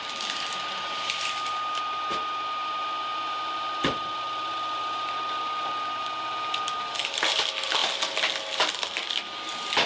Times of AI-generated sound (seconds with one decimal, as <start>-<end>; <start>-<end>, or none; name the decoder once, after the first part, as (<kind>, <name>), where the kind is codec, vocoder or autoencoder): none